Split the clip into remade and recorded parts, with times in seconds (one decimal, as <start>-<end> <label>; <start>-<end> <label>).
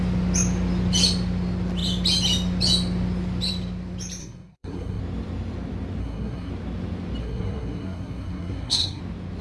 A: 0.0-4.2 recorded; 4.2-5.0 remade; 5.0-6.0 recorded; 6.0-6.5 remade; 6.5-7.2 recorded; 7.2-9.0 remade; 9.0-9.4 recorded